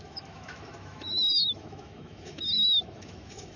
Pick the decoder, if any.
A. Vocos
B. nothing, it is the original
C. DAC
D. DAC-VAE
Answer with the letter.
D